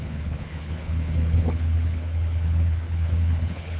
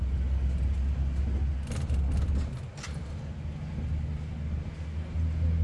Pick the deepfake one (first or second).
first